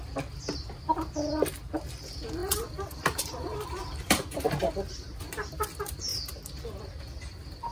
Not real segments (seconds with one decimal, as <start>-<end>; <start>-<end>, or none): 2.4-4.6